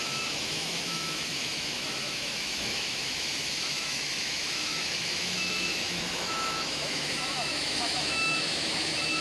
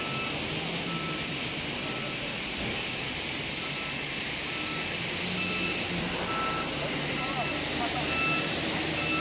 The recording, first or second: second